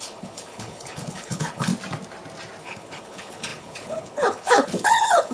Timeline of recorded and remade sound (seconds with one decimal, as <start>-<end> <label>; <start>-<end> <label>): 0.0-1.7 remade; 1.7-2.6 recorded; 2.6-5.3 remade